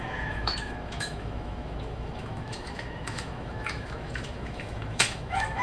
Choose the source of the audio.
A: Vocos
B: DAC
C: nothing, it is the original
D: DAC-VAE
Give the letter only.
D